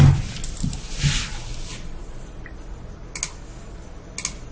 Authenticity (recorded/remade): recorded